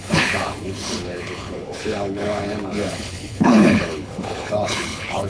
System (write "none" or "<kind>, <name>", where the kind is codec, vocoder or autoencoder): codec, HILCodec